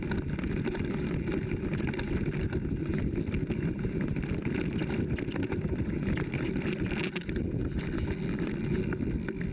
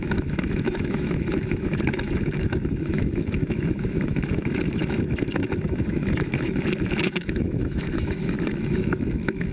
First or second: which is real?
first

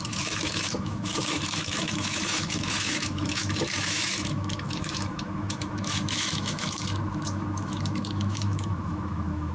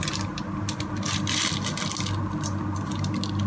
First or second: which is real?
second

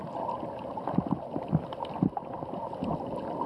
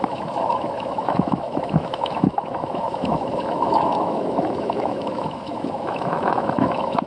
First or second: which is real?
first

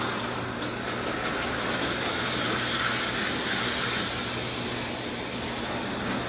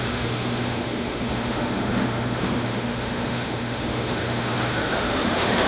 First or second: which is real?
first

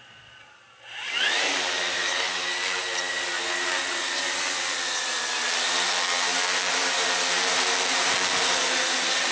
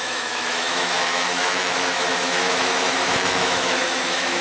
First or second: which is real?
first